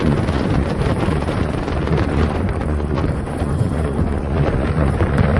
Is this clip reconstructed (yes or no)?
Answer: yes